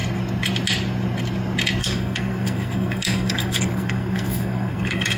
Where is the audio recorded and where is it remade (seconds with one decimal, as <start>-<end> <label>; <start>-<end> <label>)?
0.0-1.8 recorded; 1.8-5.2 remade